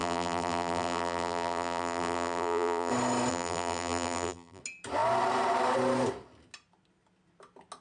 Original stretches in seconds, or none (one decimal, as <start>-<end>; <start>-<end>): 2.9-3.3; 4.6-7.8